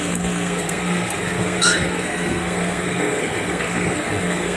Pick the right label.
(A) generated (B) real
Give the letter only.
A